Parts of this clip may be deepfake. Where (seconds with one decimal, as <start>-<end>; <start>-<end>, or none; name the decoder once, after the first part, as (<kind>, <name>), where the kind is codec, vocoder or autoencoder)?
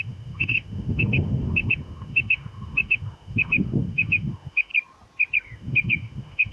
0.0-4.7 (autoencoder, DAC-VAE); 5.4-6.5